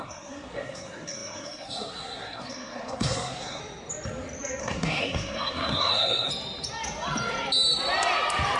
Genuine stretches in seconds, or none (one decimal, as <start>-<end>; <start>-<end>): 3.6-4.6; 6.3-8.6